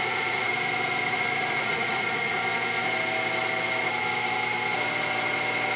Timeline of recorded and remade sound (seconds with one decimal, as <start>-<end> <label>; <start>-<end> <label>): 0.0-0.5 remade; 0.5-1.1 recorded; 1.1-2.4 remade; 2.4-5.8 recorded